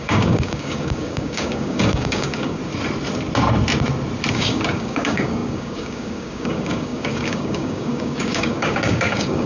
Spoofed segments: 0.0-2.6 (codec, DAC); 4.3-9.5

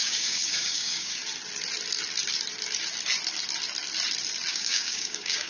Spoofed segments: 0.0-1.2 (codec, DAC); 4.5-5.5

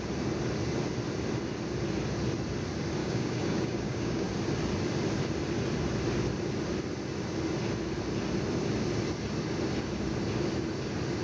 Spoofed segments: 3.0-4.3 (codec, DAC)

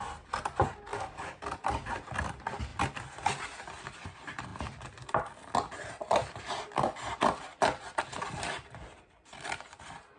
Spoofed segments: 0.9-1.4 (codec, DAC)

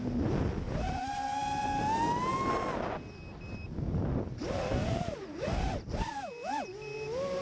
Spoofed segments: none

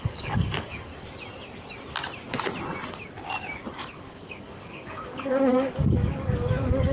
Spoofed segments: 0.0-0.9 (codec, DAC); 3.9-6.9